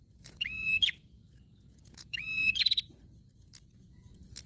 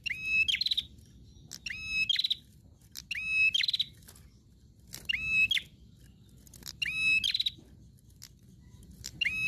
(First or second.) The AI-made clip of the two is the first